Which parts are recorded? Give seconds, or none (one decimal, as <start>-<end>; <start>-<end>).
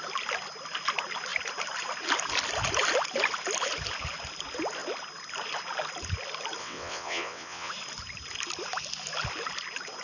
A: 0.0-6.6; 7.7-10.0